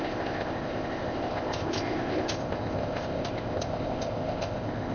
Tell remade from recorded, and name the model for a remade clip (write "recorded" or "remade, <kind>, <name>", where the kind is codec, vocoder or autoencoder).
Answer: remade, codec, ZipCodec